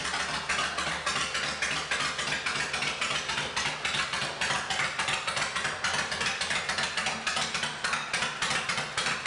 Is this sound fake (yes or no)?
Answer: no